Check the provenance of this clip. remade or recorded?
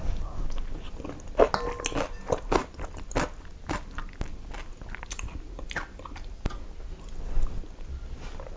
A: recorded